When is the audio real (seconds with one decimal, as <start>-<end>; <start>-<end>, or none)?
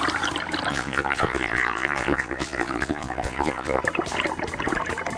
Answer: 0.0-0.7; 3.8-5.2